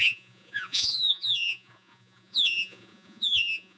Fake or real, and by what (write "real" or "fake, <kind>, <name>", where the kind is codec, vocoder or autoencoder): fake, vocoder, Vocos